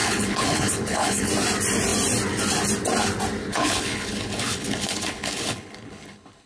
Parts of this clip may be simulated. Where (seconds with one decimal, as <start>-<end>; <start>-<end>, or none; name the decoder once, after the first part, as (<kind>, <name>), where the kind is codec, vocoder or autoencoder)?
0.0-1.3 (codec, HILCodec); 3.5-6.5